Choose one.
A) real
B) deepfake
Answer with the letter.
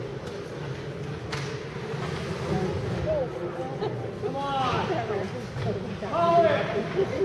A